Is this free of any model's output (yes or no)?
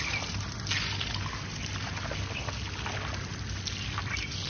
yes